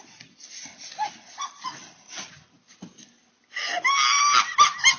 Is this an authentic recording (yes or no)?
yes